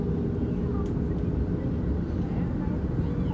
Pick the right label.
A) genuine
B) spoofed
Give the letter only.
A